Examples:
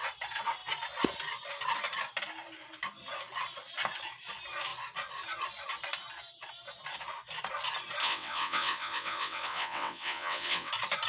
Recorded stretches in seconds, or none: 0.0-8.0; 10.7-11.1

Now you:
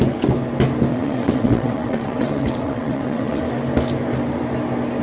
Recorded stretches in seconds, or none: 0.0-0.9; 3.4-5.0

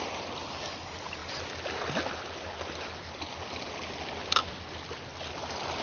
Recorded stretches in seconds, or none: 0.0-5.8

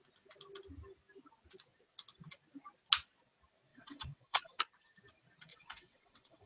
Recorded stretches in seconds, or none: 0.0-3.7; 4.5-5.5

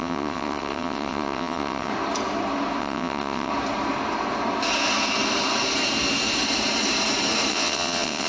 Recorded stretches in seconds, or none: 1.9-2.8; 3.5-7.5